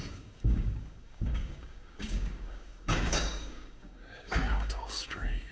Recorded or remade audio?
remade